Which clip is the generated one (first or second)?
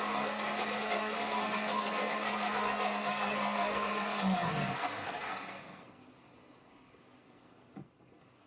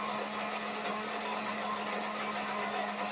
first